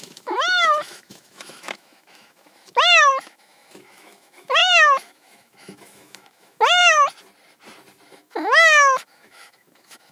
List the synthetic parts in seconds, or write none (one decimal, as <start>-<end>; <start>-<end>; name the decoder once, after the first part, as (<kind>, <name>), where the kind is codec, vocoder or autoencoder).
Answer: 0.0-6.8 (autoencoder, DAC-VAE); 8.1-10.1

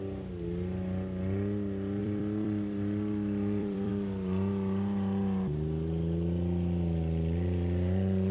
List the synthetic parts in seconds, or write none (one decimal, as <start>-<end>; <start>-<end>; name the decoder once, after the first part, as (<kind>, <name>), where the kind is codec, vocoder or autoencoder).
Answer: 2.0-3.9 (vocoder, BigVGAN v2)

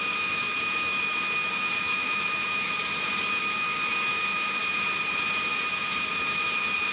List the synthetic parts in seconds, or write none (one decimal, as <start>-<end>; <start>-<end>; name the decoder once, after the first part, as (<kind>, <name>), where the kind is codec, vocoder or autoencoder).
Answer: 0.0-2.8 (autoencoder, DAC-VAE); 3.3-4.6; 6.1-6.9

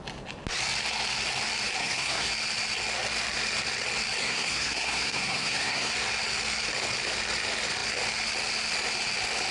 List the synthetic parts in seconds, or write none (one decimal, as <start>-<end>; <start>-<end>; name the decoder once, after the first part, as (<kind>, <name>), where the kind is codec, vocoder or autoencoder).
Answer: 1.8-2.3 (codec, SNAC); 4.2-5.9

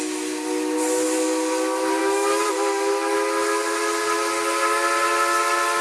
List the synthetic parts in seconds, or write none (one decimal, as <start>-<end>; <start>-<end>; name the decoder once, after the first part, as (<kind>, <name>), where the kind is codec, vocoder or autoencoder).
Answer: 2.0-2.5 (autoencoder, DAC-VAE)

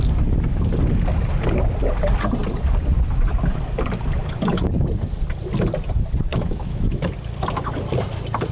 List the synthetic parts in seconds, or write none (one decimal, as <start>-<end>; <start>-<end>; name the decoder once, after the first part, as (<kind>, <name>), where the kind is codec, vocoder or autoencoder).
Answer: 6.3-7.1 (autoencoder, DAC-VAE)